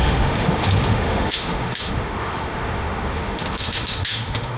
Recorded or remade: remade